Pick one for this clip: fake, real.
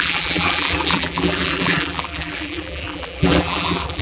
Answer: fake